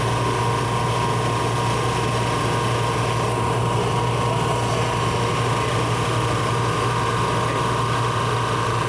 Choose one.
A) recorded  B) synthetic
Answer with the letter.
A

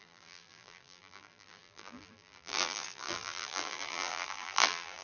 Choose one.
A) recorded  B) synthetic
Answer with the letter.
B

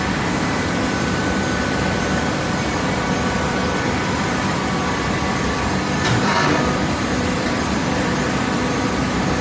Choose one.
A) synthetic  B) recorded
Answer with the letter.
A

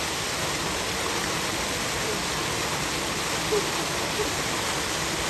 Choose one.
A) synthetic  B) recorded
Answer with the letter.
B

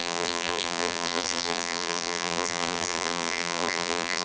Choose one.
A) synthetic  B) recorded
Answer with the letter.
A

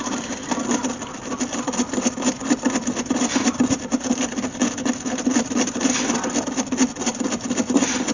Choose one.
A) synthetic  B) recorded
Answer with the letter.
B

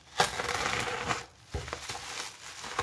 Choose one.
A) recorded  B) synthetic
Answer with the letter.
A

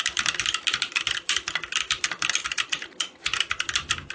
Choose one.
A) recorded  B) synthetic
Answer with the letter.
B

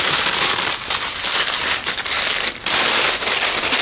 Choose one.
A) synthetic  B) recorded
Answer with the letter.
A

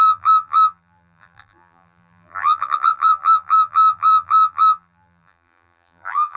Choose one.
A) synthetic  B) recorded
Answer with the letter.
A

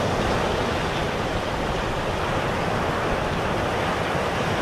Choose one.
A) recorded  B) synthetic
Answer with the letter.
A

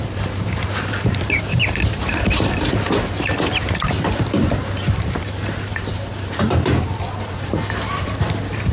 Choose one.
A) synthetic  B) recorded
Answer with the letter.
A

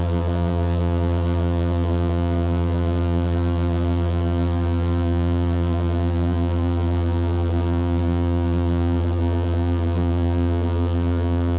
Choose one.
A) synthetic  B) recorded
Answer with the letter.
A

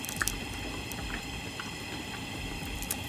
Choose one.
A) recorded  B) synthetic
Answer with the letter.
B